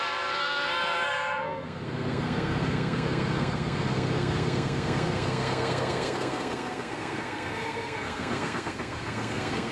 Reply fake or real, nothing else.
fake